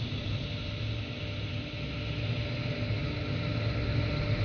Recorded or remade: recorded